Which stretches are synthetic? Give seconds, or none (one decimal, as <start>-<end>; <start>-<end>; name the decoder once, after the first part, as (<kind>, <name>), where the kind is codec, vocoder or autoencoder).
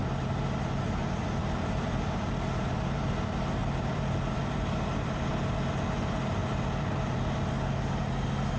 1.4-3.0 (vocoder, BigVGAN v2); 3.6-5.3; 6.4-7.7